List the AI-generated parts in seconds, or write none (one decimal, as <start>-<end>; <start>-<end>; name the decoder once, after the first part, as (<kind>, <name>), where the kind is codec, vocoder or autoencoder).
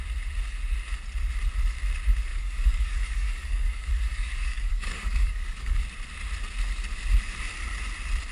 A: 2.3-5.8 (codec, DAC)